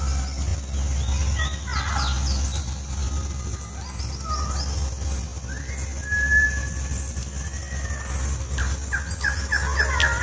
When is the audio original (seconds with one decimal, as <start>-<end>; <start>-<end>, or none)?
0.0-10.2